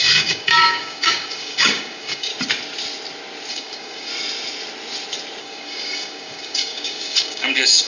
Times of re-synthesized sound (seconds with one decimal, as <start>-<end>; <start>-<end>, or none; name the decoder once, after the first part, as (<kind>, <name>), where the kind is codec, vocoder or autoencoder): 0.0-2.3 (codec, DAC); 3.5-4.1; 5.4-7.9